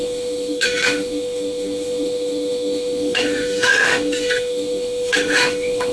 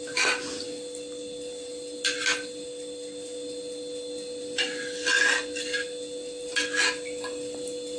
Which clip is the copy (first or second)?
first